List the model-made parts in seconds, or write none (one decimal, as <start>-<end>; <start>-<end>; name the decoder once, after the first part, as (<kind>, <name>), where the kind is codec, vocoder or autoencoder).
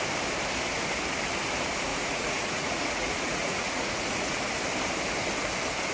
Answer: 1.9-4.4 (vocoder, Vocos)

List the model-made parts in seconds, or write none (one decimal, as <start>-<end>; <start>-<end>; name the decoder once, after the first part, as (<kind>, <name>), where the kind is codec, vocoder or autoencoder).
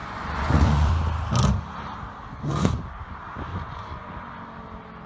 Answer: 0.0-0.9 (vocoder, Vocos); 2.3-2.8; 3.5-4.1